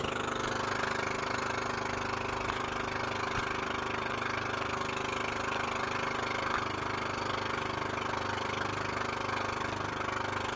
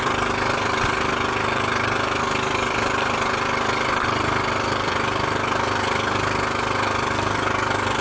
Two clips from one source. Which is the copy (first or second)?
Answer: second